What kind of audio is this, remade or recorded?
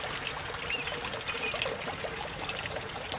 recorded